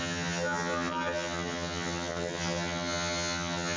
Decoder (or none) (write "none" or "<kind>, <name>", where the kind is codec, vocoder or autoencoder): vocoder, HiFi-GAN